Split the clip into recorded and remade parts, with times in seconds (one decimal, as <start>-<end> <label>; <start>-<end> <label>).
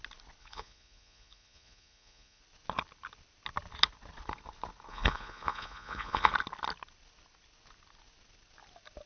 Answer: 0.0-0.4 recorded; 0.4-2.4 remade; 2.4-4.9 recorded; 4.9-6.3 remade; 6.3-9.1 recorded